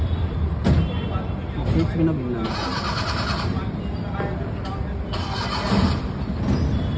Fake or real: real